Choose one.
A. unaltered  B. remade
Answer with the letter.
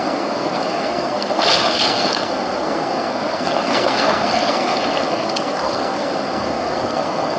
B